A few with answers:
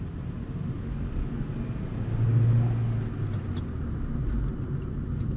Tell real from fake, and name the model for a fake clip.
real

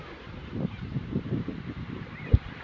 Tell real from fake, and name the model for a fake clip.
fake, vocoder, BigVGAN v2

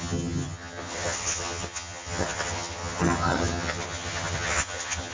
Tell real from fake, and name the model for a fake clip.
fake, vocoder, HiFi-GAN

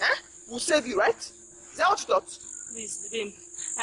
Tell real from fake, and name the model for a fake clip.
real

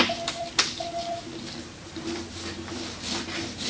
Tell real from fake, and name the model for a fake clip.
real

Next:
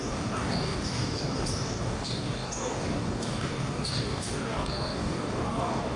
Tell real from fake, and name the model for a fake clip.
fake, codec, DAC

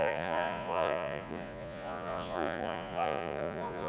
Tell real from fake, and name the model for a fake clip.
fake, vocoder, Vocos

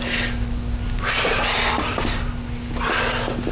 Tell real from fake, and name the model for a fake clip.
real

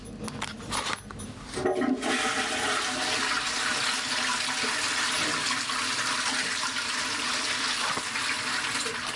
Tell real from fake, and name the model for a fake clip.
real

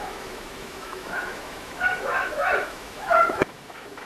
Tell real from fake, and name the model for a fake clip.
fake, autoencoder, DAC-VAE